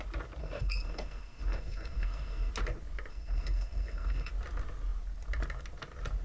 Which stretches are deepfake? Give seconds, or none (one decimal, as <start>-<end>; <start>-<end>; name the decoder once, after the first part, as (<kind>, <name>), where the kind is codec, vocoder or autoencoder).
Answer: 0.4-2.5 (codec, SNAC); 3.1-4.3